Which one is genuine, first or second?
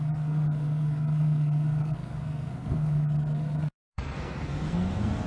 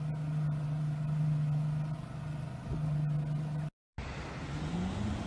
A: second